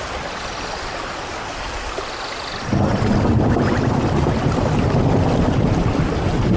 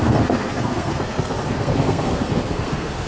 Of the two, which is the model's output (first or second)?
second